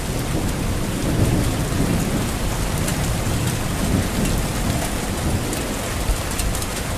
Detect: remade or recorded recorded